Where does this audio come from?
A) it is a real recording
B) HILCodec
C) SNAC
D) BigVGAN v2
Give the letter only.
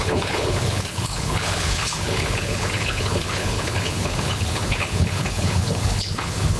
B